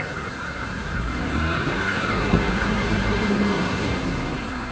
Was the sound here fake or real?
fake